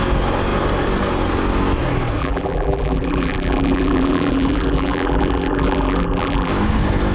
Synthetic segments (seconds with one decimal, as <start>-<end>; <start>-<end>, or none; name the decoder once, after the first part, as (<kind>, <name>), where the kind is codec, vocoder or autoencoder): 2.2-6.5 (vocoder, BigVGAN v2)

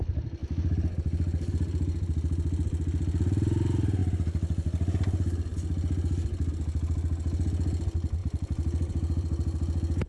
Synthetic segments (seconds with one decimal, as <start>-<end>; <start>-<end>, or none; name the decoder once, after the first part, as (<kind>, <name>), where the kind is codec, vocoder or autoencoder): 8.2-10.1 (vocoder, BigVGAN v2)

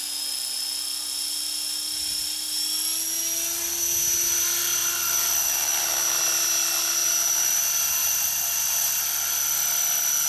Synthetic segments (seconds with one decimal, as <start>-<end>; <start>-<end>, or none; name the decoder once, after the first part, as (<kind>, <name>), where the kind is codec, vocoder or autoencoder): 4.8-6.2 (vocoder, BigVGAN v2); 7.0-7.6; 8.0-9.0

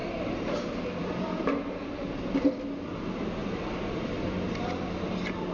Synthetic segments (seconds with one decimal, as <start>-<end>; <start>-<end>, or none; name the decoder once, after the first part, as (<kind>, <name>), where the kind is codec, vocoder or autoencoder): 0.0-1.4 (vocoder, BigVGAN v2); 3.4-4.5

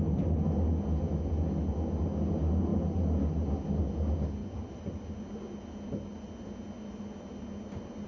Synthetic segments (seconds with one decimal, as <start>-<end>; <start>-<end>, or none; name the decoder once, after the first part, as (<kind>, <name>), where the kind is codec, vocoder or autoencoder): 4.4-5.2 (vocoder, BigVGAN v2)